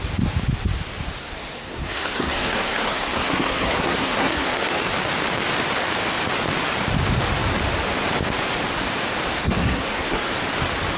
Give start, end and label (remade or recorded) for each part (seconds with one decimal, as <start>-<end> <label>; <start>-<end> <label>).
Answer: 0.0-1.2 recorded; 1.2-4.8 remade; 4.8-9.3 recorded; 9.3-10.3 remade; 10.3-11.0 recorded